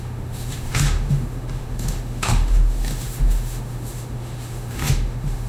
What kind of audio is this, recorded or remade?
remade